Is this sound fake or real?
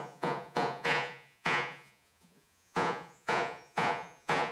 fake